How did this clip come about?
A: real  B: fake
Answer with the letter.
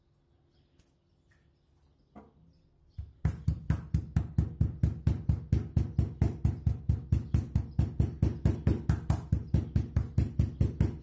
A